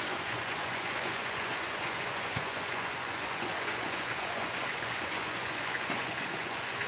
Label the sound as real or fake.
fake